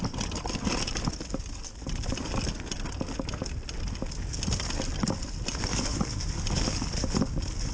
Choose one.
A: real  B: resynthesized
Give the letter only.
A